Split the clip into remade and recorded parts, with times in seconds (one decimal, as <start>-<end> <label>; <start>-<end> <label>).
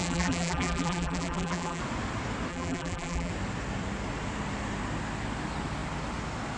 0.0-1.8 remade; 1.8-2.5 recorded; 2.5-3.3 remade; 3.3-6.6 recorded